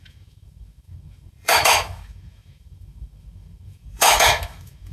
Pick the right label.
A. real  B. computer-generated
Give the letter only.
B